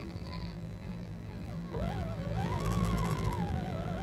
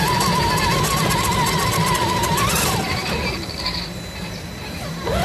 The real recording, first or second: second